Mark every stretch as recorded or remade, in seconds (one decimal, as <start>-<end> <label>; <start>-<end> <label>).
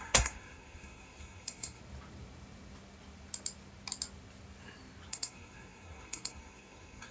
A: 0.0-1.8 remade; 1.8-5.1 recorded; 5.1-7.1 remade